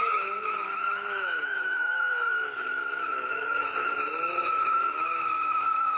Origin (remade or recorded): remade